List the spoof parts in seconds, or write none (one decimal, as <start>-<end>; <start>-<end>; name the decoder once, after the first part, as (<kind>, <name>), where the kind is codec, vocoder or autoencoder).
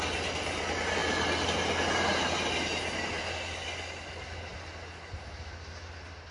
none